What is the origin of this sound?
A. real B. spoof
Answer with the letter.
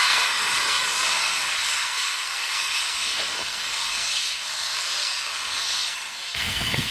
B